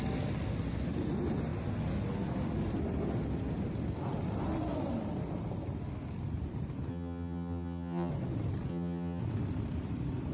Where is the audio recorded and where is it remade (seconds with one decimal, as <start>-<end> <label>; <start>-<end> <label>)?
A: 0.0-6.9 recorded; 6.9-8.1 remade; 8.1-8.7 recorded; 8.7-9.2 remade; 9.2-10.3 recorded